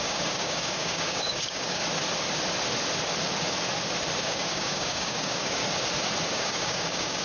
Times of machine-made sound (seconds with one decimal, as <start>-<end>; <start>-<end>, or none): 0.0-1.8; 4.2-5.6; 6.3-7.2